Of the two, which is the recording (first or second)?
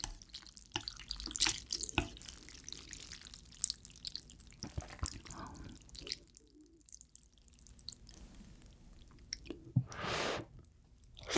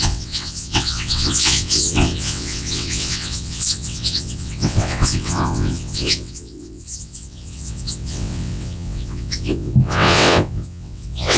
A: first